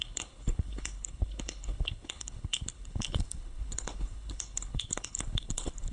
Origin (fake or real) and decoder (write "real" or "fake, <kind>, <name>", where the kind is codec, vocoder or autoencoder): fake, codec, HILCodec